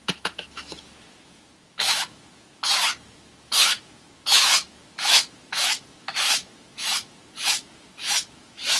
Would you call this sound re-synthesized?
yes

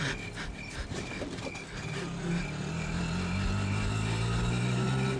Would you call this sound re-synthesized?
no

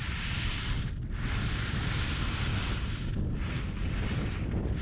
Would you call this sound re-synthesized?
no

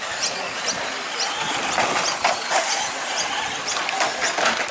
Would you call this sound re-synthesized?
no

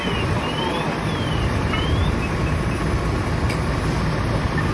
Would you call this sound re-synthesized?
no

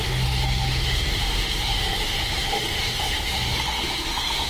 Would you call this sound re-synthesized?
yes